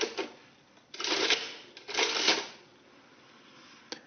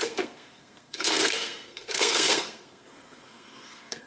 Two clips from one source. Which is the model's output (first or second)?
second